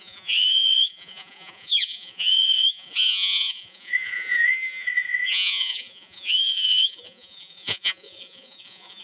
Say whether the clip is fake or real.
fake